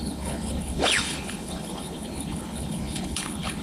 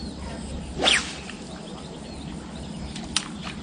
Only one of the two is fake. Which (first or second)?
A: first